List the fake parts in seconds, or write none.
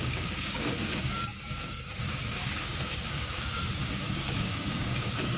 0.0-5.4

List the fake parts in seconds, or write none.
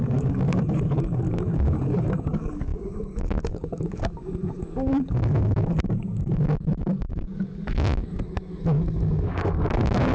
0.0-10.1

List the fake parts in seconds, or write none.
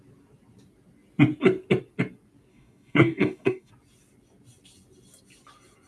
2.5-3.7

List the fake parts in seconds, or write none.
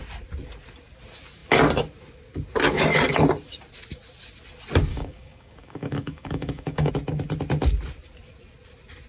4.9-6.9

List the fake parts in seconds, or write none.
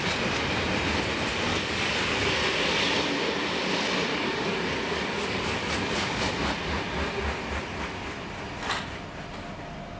1.5-2.3; 4.1-6.3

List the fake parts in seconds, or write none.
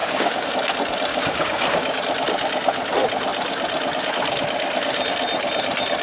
0.0-0.5; 1.1-2.0